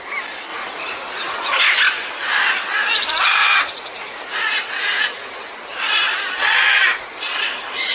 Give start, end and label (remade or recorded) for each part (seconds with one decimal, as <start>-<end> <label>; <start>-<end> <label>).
0.0-0.5 recorded; 0.5-1.6 remade; 1.6-3.4 recorded; 3.4-5.3 remade; 5.3-6.9 recorded; 6.9-7.9 remade